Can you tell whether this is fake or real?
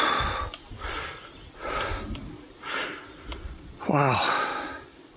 real